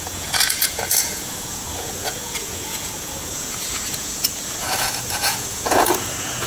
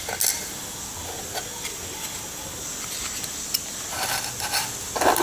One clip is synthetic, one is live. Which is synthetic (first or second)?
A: first